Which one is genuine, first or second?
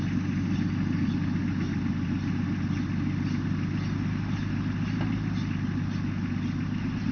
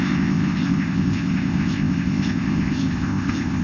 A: first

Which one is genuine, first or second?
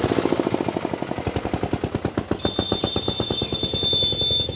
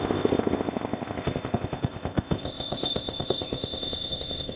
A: first